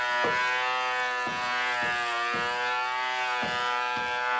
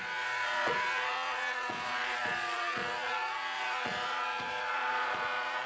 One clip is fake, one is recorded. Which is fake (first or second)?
second